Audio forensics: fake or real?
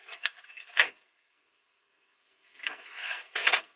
fake